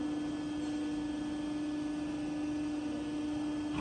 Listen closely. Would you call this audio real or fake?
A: real